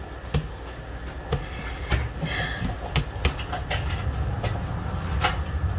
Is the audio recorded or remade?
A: recorded